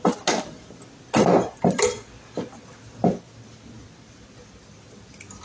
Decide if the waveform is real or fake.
real